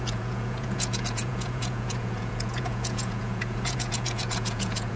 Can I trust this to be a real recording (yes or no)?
no